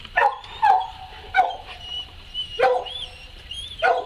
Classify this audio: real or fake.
fake